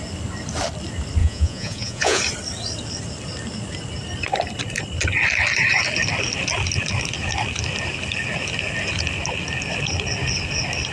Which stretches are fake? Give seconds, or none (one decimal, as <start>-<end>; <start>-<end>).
1.2-2.2